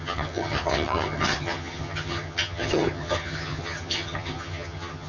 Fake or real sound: fake